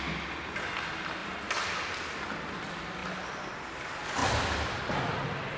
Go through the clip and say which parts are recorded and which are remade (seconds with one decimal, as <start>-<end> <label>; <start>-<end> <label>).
0.0-5.6 recorded